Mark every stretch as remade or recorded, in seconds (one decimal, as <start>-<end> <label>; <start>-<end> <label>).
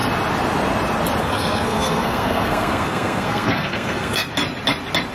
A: 0.0-1.2 recorded; 1.2-4.3 remade; 4.3-5.1 recorded